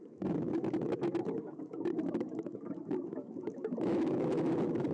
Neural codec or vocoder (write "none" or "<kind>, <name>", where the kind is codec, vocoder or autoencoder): autoencoder, DAC-VAE